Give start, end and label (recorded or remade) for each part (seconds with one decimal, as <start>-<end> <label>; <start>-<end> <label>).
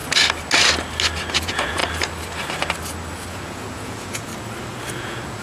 0.0-1.3 recorded; 1.3-1.8 remade; 1.8-3.3 recorded; 3.3-4.3 remade; 4.3-4.9 recorded; 4.9-5.4 remade